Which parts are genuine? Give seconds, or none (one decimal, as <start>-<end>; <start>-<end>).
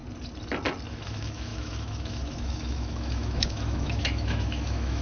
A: 0.0-0.9